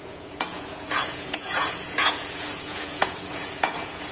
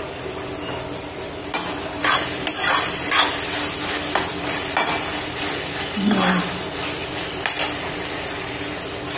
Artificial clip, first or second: first